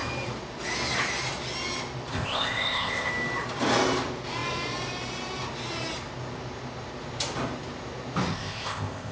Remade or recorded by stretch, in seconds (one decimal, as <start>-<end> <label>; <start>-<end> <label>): 0.0-2.1 recorded; 2.1-3.1 remade; 3.1-8.3 recorded; 8.3-9.1 remade